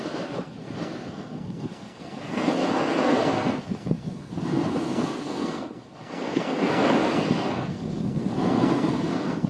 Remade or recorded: remade